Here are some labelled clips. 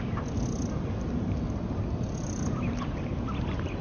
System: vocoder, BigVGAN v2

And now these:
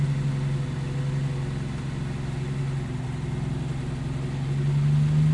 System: none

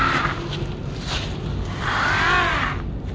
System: none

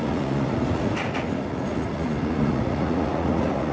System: vocoder, Vocos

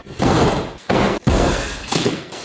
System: codec, SNAC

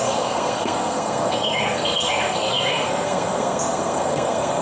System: codec, SNAC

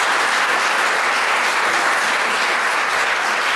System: none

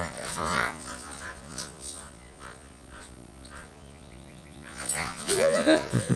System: vocoder, Vocos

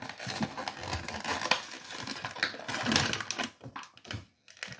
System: none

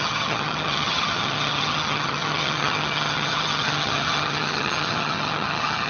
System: vocoder, HiFi-GAN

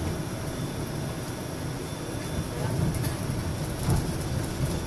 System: none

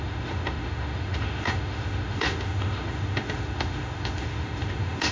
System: autoencoder, DAC-VAE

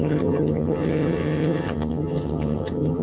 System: vocoder, HiFi-GAN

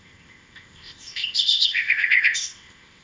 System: codec, ZipCodec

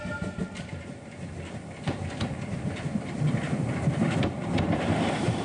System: vocoder, BigVGAN v2